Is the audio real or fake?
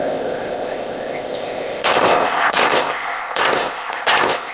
fake